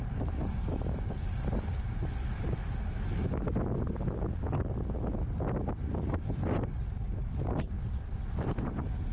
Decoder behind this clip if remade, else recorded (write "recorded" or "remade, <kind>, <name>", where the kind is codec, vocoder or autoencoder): recorded